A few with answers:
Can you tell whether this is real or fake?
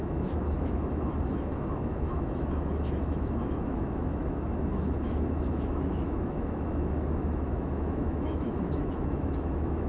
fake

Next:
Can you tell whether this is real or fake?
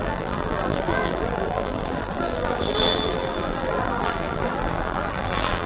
fake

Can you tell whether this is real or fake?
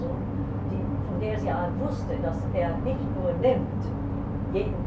real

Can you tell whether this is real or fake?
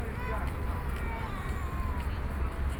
fake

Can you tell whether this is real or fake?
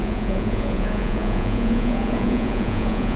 fake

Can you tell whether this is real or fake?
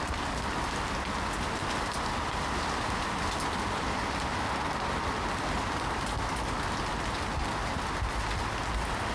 real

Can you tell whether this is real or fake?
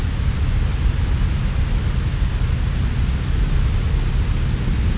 real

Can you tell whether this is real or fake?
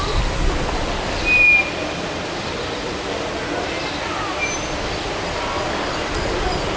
real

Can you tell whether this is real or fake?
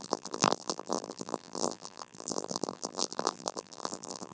fake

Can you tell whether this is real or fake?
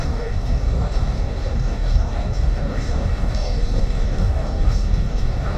fake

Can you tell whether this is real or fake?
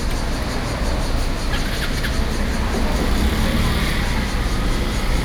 real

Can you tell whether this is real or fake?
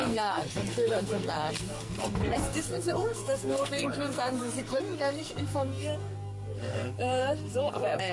fake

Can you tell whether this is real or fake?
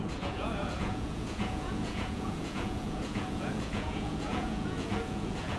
fake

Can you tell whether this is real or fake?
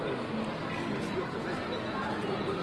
real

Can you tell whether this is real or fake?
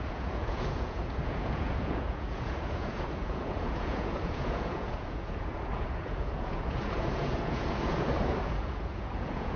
fake